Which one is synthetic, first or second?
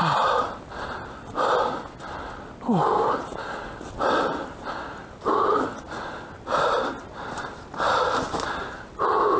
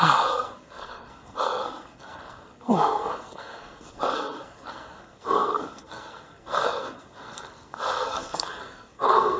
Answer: second